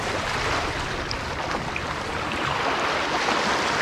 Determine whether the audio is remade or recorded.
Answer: recorded